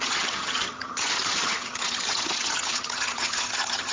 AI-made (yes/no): yes